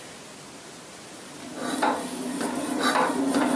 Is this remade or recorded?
recorded